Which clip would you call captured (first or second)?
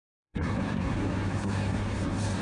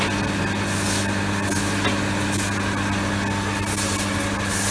second